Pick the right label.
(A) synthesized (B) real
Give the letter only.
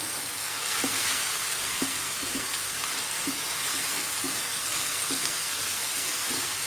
A